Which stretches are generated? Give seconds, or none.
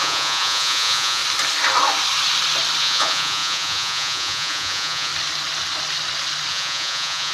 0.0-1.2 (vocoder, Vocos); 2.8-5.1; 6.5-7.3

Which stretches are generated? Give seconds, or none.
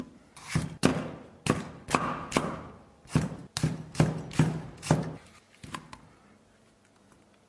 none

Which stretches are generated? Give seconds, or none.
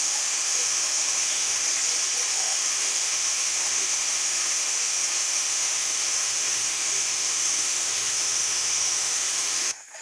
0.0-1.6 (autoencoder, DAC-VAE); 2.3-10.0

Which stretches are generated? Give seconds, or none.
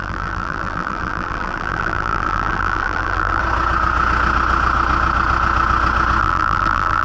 0.0-3.4 (vocoder, BigVGAN v2); 6.2-7.0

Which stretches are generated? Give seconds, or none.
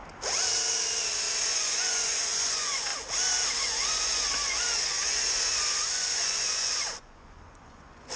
1.5-2.9 (vocoder, Vocos); 3.6-8.2